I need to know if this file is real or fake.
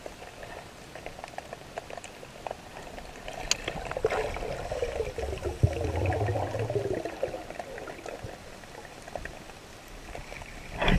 real